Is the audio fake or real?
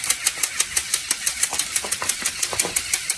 real